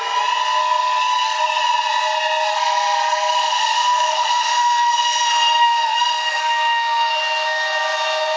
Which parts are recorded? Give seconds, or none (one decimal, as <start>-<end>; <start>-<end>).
0.0-0.6; 1.6-2.5; 7.1-8.4